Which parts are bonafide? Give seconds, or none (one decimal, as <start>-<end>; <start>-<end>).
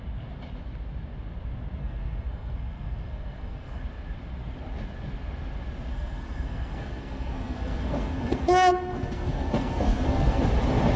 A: 0.0-1.8; 3.8-5.9; 10.4-11.0